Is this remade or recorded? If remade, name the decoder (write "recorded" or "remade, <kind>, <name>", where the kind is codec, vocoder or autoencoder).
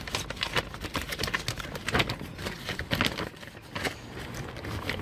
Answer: recorded